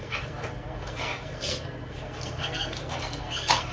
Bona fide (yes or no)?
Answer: no